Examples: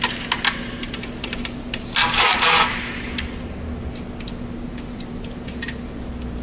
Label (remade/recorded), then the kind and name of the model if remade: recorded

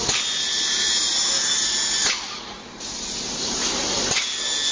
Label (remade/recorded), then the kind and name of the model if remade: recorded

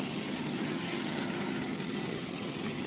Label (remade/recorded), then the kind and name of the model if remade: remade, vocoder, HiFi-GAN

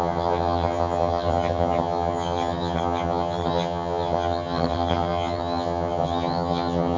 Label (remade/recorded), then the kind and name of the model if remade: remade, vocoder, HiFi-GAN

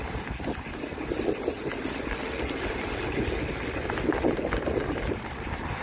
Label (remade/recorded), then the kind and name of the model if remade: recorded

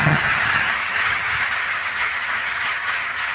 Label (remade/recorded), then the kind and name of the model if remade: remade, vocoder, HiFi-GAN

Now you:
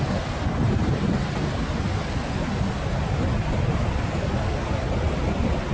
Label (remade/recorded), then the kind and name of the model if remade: recorded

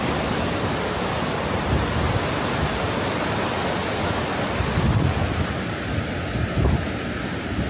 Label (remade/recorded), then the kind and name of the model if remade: recorded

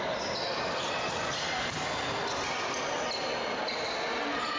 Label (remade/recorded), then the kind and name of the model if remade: recorded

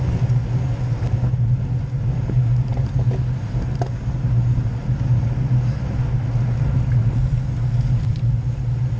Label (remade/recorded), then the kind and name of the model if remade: recorded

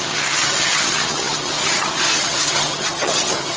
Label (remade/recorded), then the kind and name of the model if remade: remade, vocoder, HiFi-GAN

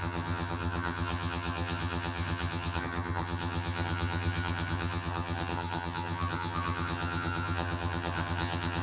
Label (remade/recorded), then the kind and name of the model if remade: remade, vocoder, HiFi-GAN